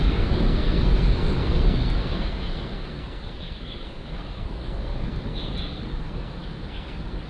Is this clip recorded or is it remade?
remade